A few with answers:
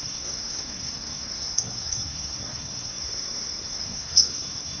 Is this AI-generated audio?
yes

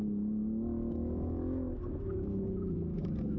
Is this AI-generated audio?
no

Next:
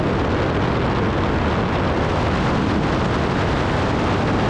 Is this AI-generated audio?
no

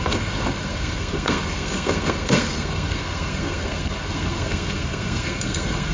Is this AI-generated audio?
yes